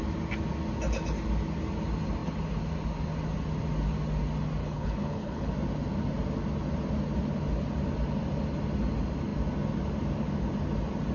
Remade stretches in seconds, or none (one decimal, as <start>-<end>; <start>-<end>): 4.6-5.5

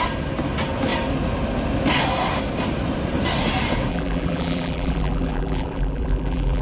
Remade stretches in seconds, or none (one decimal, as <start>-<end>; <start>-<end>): 3.9-6.6

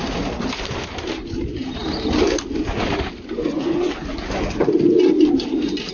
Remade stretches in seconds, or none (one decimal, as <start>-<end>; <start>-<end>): none

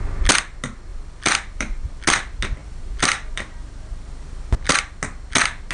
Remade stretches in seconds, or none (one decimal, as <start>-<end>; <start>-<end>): 0.9-2.0; 2.6-4.8